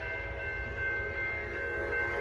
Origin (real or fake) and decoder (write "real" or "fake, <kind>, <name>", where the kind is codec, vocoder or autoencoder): real